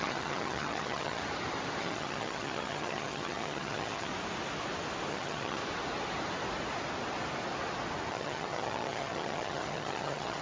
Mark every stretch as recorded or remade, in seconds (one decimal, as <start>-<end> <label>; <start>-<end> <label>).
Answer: 0.0-1.2 remade; 1.2-1.8 recorded; 1.8-4.1 remade; 4.1-5.1 recorded; 5.1-5.6 remade; 5.6-8.1 recorded; 8.1-10.4 remade